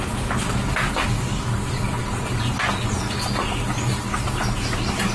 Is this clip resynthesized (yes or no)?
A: no